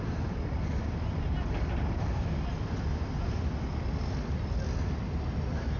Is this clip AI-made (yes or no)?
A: no